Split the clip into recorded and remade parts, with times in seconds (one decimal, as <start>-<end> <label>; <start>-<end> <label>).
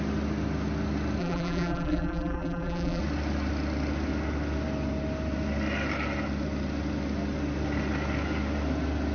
0.0-1.2 recorded; 1.2-3.0 remade; 3.0-9.1 recorded